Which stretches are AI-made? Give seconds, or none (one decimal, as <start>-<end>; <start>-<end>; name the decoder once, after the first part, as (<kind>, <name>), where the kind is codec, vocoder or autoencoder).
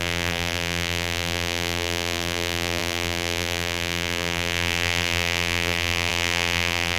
0.0-7.0 (vocoder, BigVGAN v2)